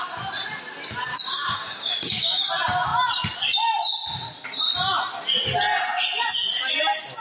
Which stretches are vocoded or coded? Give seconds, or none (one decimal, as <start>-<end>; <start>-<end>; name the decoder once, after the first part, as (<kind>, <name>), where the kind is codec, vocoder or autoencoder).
1.1-2.5 (codec, DAC)